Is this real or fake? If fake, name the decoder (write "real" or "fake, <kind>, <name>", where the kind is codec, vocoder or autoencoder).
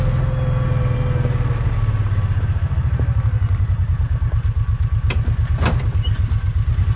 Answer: real